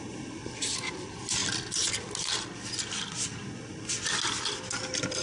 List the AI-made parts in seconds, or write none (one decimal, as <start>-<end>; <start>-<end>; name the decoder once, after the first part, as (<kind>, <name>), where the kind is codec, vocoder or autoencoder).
none